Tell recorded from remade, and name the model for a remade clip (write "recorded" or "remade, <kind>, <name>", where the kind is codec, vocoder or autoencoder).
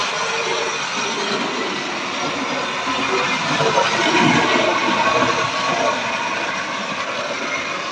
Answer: recorded